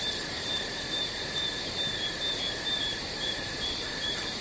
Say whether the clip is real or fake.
real